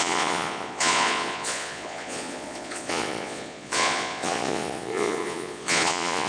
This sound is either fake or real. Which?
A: fake